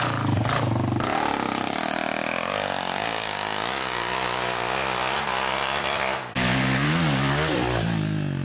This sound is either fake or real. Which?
real